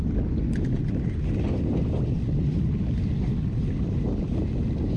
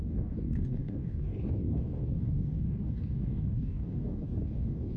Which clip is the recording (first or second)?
first